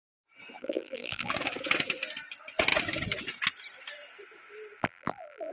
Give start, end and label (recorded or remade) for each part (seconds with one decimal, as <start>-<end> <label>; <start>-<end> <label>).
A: 0.0-0.6 recorded; 0.6-1.3 remade; 1.3-4.8 recorded; 4.8-5.5 remade